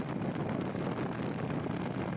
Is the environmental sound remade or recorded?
recorded